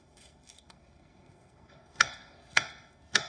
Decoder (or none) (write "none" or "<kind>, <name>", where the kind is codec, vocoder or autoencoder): codec, SNAC